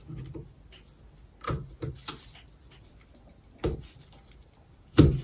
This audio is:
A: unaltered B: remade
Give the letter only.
A